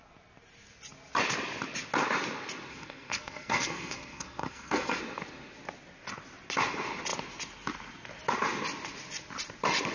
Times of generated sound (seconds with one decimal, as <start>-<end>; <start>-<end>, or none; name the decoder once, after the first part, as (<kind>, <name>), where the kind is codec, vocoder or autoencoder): 2.7-5.0 (codec, SNAC)